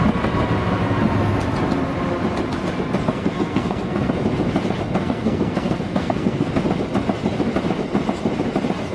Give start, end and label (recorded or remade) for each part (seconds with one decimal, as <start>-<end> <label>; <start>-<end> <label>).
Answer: 0.0-3.1 recorded; 3.1-4.1 remade; 4.1-5.0 recorded; 5.0-6.5 remade; 6.5-8.9 recorded

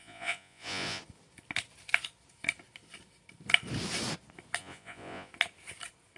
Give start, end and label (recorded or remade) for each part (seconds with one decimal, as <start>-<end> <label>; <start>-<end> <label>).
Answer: 0.0-1.0 remade; 1.0-4.6 recorded; 4.6-5.3 remade; 5.3-6.2 recorded